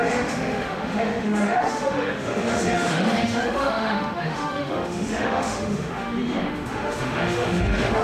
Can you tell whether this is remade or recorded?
remade